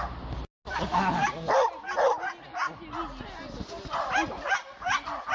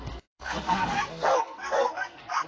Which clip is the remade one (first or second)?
second